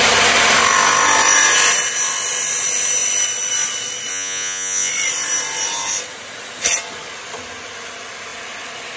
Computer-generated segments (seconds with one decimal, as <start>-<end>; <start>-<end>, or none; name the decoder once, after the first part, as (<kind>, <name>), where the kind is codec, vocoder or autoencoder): 4.1-4.9 (vocoder, Vocos)